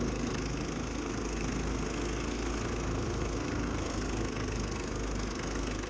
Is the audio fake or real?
fake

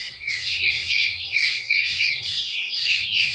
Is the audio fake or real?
fake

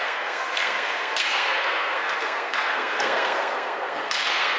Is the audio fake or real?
fake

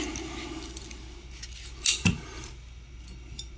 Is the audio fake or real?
real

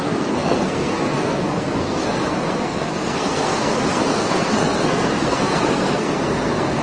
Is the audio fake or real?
fake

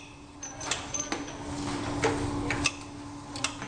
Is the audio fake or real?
real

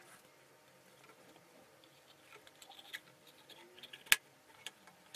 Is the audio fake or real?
real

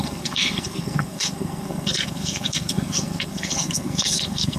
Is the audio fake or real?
fake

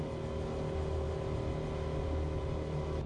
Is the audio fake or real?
real